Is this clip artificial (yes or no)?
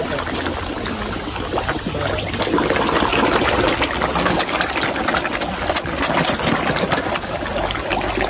no